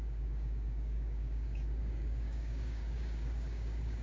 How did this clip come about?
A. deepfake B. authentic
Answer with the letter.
A